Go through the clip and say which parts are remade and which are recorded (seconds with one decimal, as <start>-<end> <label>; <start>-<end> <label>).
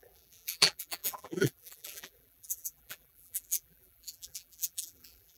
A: 0.0-5.4 remade